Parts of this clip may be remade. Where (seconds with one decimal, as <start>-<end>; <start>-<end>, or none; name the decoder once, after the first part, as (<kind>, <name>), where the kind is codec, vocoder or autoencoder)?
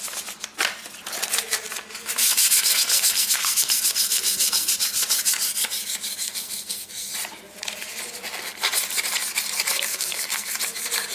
2.2-4.7 (codec, SNAC); 6.2-7.1; 9.9-10.6